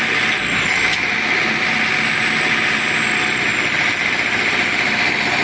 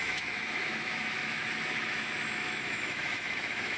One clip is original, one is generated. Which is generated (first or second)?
second